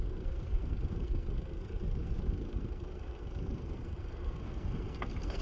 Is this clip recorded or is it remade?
remade